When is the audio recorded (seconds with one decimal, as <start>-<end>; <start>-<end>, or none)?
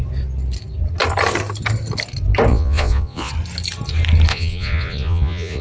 0.0-2.5; 3.3-4.3